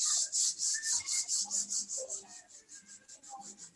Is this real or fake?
real